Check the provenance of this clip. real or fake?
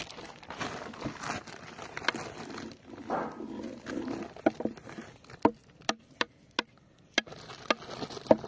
real